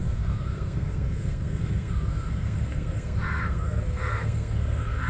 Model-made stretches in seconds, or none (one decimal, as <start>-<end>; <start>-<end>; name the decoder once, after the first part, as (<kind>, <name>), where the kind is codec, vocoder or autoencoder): 0.0-5.1 (codec, SNAC)